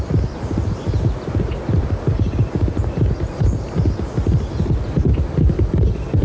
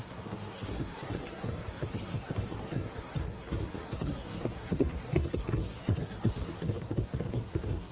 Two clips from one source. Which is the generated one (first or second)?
second